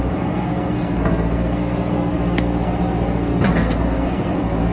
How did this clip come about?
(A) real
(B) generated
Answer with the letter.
B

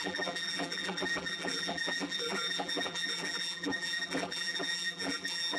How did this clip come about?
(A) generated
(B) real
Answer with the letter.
A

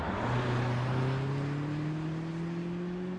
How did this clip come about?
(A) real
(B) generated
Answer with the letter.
A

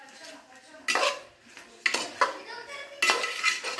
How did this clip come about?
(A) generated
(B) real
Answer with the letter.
B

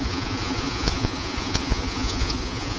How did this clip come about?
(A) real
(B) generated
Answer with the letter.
B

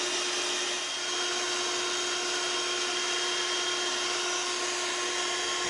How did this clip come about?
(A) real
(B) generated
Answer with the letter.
A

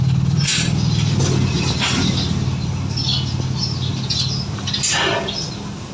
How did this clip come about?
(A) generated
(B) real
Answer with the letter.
B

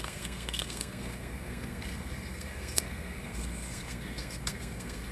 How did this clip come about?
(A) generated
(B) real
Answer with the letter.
A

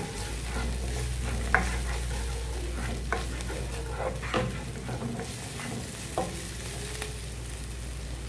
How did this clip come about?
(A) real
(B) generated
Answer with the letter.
A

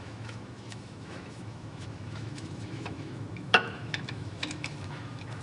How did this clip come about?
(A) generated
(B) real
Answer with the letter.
A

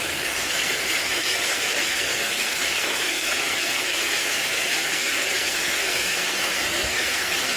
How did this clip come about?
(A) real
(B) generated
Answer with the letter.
B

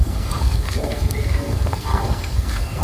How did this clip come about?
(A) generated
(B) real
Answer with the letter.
A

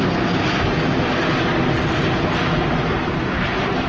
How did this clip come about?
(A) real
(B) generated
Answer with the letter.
A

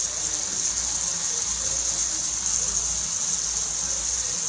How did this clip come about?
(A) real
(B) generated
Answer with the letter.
A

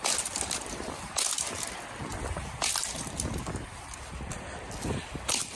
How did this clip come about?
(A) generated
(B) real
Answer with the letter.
B